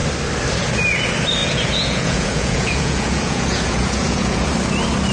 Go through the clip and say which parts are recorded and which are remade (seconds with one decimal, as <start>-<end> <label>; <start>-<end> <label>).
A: 0.0-1.4 recorded; 1.4-4.5 remade; 4.5-5.1 recorded